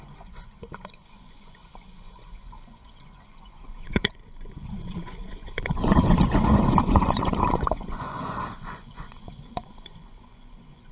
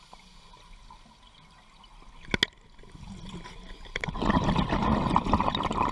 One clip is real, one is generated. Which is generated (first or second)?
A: first